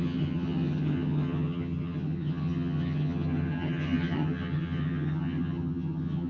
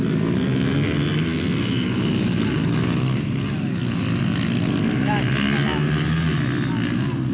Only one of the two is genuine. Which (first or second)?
second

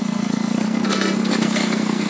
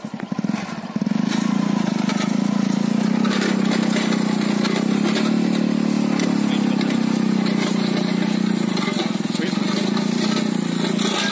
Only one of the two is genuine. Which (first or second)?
second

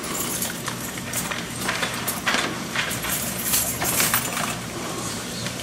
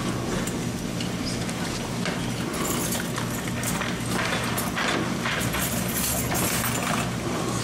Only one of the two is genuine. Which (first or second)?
second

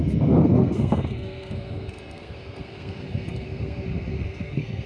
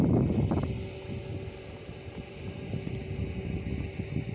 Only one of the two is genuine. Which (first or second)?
second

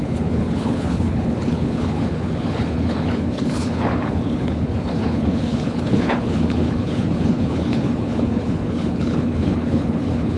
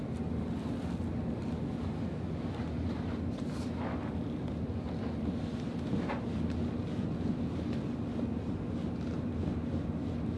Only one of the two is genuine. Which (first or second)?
second